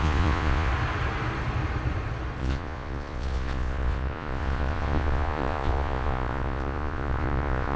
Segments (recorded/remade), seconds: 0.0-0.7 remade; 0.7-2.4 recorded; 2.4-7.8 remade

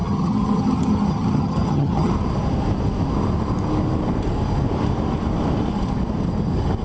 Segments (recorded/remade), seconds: 0.0-2.1 remade; 2.1-6.8 recorded

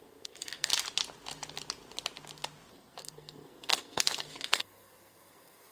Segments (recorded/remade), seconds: 0.0-0.7 remade; 0.7-2.7 recorded; 2.7-5.7 remade

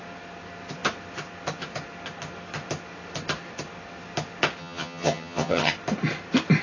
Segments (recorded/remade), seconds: 0.0-4.6 recorded; 4.6-5.7 remade; 5.7-6.6 recorded

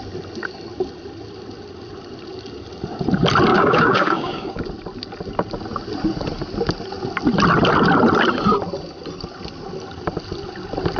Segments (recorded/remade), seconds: 0.0-3.5 recorded; 3.5-4.6 remade; 4.6-11.0 recorded

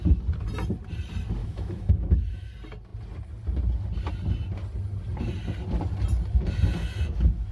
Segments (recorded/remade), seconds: 0.0-1.4 recorded; 1.4-2.5 remade; 2.5-7.5 recorded

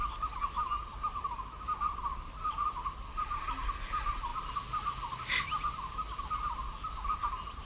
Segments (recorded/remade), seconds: 0.0-7.6 recorded

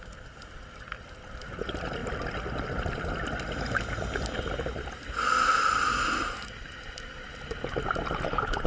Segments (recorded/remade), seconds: 0.0-2.0 recorded; 2.0-3.0 remade; 3.0-8.7 recorded